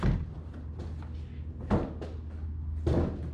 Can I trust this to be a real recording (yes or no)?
yes